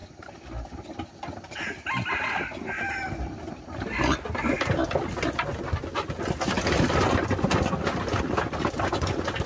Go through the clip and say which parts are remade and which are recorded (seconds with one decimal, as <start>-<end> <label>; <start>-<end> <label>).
0.0-9.5 recorded